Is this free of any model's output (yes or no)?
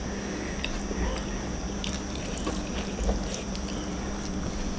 yes